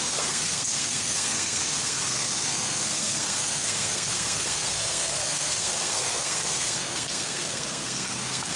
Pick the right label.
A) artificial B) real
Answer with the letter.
A